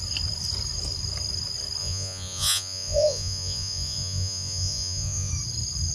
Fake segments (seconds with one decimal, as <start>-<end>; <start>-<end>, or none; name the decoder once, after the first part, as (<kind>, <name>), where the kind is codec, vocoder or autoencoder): 1.8-5.3 (vocoder, Vocos)